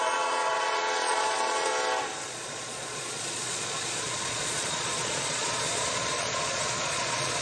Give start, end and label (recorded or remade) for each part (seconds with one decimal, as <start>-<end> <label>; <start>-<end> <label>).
0.0-1.7 remade; 1.7-2.3 recorded; 2.3-7.4 remade